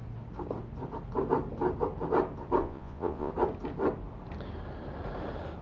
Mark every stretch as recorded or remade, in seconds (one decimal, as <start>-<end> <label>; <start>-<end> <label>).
0.0-2.6 recorded; 2.6-3.3 remade; 3.3-5.6 recorded